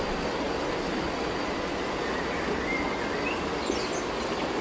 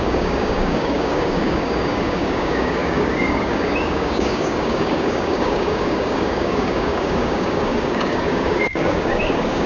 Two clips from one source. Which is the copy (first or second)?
second